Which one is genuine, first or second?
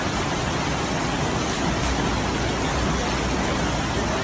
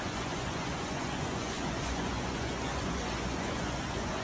first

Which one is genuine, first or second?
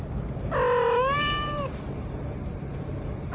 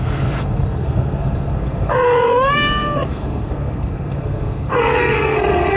first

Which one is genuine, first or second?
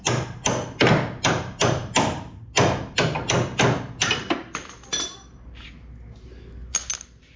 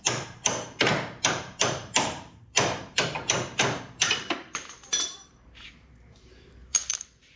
first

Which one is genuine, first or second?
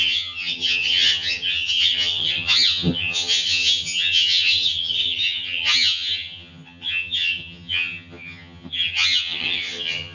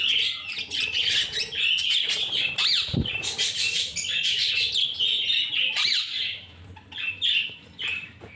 second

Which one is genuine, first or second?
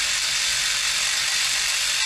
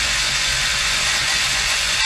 first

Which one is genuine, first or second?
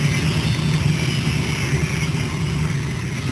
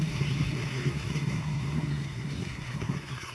first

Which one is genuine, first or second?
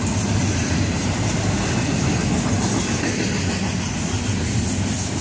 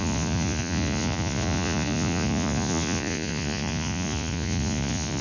first